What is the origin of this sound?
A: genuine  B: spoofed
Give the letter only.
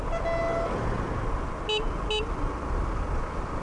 A